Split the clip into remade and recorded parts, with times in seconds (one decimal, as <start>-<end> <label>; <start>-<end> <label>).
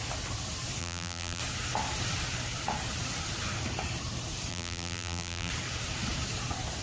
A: 0.0-0.8 recorded; 0.8-1.4 remade; 1.4-4.5 recorded; 4.5-5.5 remade; 5.5-6.8 recorded